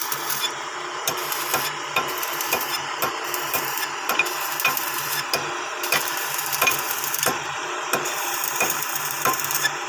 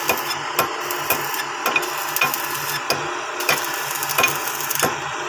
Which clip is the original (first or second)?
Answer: second